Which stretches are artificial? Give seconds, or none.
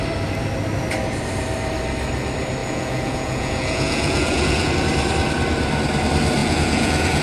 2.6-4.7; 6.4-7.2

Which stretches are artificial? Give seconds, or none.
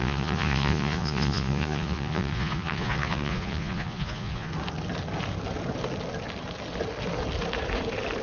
0.0-4.5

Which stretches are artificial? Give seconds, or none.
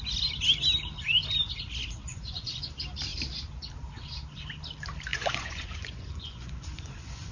2.1-2.7; 5.1-7.3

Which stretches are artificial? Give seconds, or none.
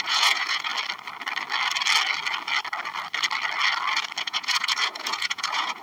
0.0-0.7; 4.2-5.8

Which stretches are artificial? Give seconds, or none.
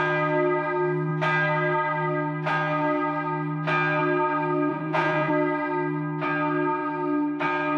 4.7-5.3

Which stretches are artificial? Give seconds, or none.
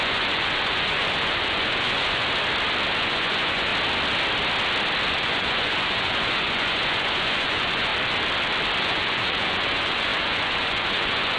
0.0-2.2; 3.0-3.7; 5.1-7.9; 8.8-11.4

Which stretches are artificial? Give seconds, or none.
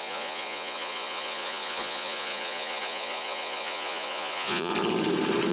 0.0-4.7